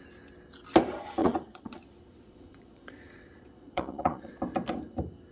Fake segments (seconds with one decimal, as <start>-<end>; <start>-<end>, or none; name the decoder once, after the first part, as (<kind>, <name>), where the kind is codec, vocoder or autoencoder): 1.2-4.4 (vocoder, Vocos)